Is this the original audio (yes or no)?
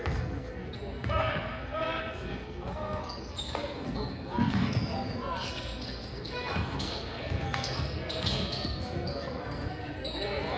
no